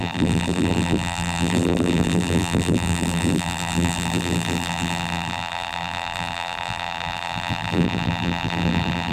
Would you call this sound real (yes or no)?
no